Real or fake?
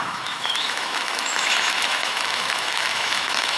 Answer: fake